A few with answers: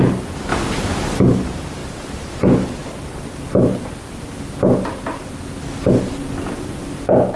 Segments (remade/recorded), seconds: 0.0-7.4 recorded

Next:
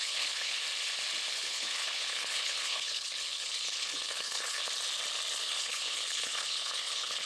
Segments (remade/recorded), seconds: 0.0-0.6 remade; 0.6-1.3 recorded; 1.3-4.6 remade; 4.6-5.4 recorded; 5.4-7.3 remade

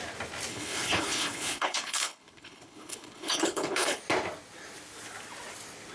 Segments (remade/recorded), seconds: 0.0-0.5 recorded; 0.5-4.0 remade; 4.0-5.9 recorded

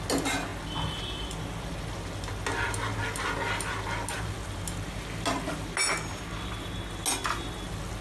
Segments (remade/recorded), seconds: 0.0-8.0 recorded